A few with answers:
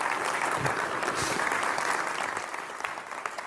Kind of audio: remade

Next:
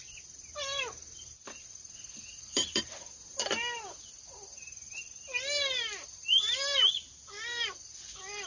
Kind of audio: remade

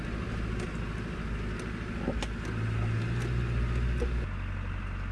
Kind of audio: recorded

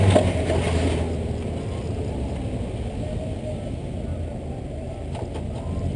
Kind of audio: recorded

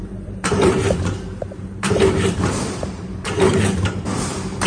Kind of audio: remade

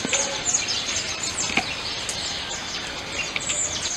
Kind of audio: recorded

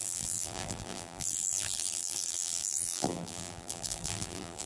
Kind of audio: remade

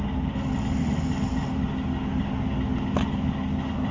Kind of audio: recorded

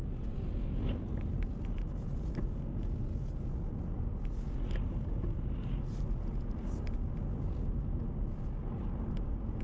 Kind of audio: recorded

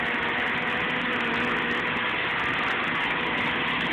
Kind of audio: recorded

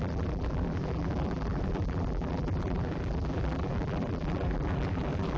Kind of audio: remade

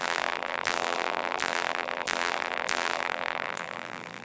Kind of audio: remade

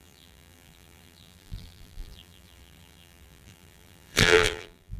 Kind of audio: remade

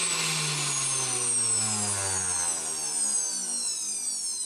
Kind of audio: recorded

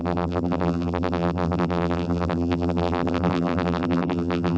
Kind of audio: remade